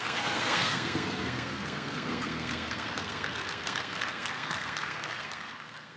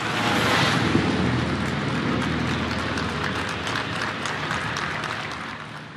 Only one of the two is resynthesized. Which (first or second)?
first